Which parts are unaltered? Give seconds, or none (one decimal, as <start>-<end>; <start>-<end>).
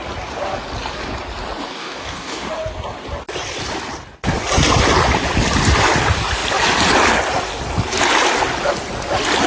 0.0-1.7; 2.5-9.5